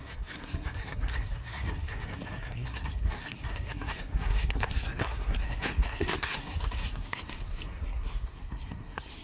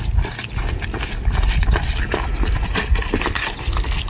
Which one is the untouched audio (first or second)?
second